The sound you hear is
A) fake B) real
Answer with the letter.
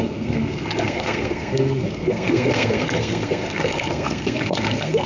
A